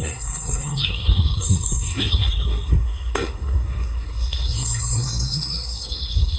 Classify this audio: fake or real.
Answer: fake